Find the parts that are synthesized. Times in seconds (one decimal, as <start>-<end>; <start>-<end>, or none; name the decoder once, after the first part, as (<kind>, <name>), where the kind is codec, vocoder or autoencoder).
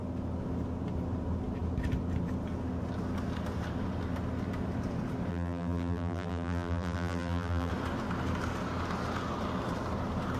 5.3-7.7 (vocoder, BigVGAN v2)